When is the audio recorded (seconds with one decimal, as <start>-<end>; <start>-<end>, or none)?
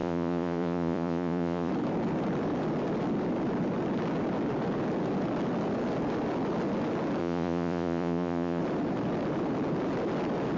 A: 1.7-7.2; 8.6-10.6